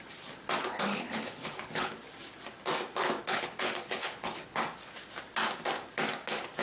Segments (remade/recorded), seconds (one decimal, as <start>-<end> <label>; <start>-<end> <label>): 0.0-0.9 recorded; 0.9-1.9 remade; 1.9-3.2 recorded; 3.2-4.6 remade; 4.6-6.6 recorded